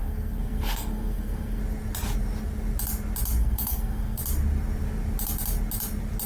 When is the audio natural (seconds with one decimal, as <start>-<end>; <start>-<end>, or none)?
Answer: 1.6-3.4; 4.2-6.3